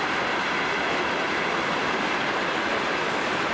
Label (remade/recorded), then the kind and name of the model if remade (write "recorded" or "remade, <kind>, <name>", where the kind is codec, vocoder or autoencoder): recorded